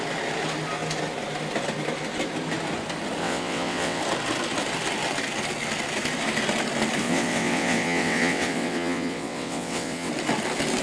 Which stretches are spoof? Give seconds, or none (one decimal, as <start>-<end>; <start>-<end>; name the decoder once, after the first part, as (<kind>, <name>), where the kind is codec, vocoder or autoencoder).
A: 3.2-4.0 (vocoder, WaveNeXt); 7.0-10.1